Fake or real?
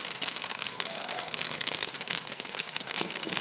fake